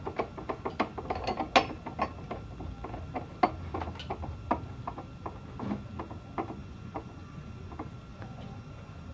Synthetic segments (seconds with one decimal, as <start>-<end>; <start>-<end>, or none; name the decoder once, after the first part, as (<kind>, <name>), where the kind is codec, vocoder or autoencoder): 6.6-7.7 (vocoder, Vocos); 8.1-9.1